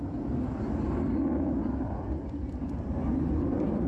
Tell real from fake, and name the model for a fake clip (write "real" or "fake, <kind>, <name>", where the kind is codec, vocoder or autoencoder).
fake, vocoder, BigVGAN v2